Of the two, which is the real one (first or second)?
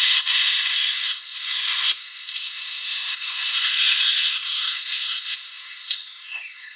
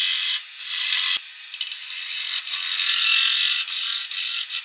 second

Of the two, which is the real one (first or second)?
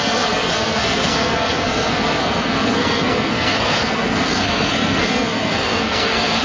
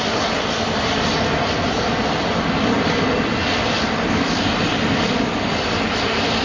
second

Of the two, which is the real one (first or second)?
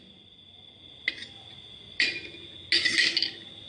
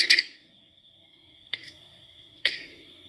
first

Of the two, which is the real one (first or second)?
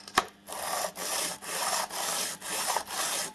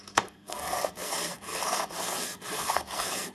first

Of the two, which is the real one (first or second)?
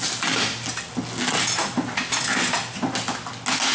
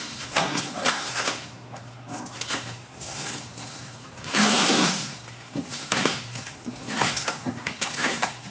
first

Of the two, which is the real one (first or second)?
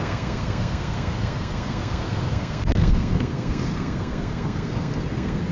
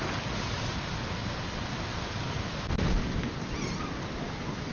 second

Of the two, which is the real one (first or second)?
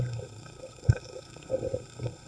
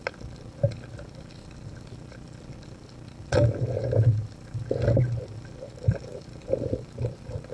second